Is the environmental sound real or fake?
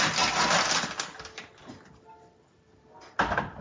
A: real